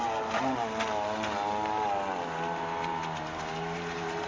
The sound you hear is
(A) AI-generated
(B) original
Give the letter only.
B